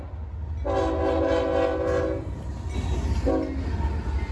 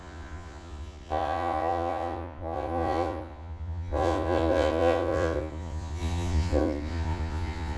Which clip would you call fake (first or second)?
second